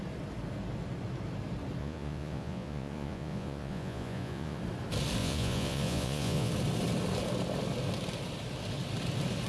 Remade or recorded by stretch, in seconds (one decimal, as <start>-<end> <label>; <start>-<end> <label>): 0.0-1.8 recorded; 1.8-4.6 remade; 4.6-5.2 recorded; 5.2-6.5 remade; 6.5-9.5 recorded